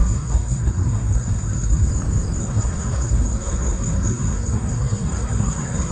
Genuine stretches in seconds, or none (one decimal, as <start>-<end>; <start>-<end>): 1.9-2.4